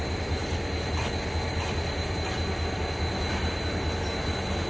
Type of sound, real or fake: real